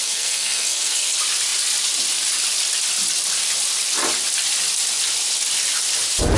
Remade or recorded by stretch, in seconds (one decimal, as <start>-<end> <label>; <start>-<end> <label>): 0.0-1.1 remade; 1.1-6.4 recorded